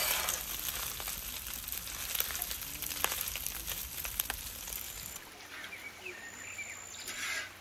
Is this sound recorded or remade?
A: recorded